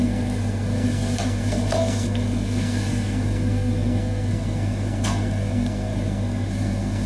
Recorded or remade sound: remade